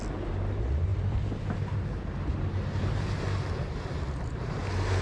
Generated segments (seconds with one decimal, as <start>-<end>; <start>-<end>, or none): none